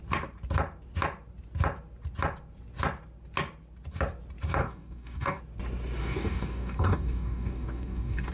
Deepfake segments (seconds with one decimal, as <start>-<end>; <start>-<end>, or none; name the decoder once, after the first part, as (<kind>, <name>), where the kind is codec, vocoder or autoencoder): 4.6-5.4 (codec, DAC); 6.0-8.3